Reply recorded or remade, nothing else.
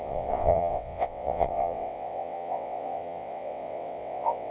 remade